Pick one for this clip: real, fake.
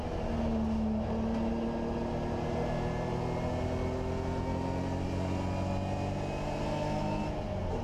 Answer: real